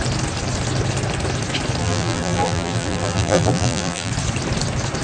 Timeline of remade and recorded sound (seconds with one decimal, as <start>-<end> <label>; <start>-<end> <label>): 0.0-1.8 recorded; 1.8-4.1 remade; 4.1-5.0 recorded